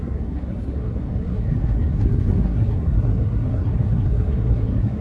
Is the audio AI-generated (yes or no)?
yes